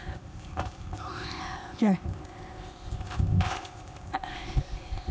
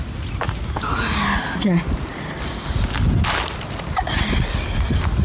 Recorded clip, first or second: second